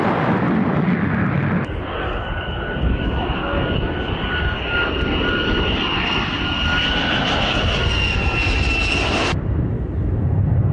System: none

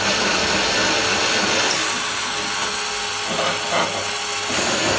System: none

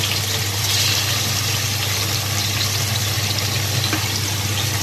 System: none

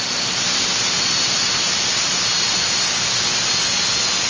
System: none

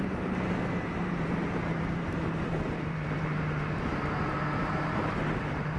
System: vocoder, BigVGAN v2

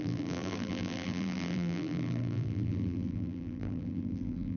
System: vocoder, BigVGAN v2